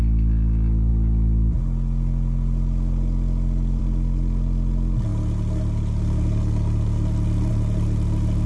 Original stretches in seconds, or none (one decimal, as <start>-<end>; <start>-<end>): 0.0-8.5